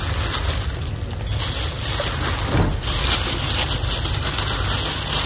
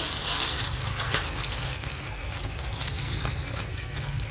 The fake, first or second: second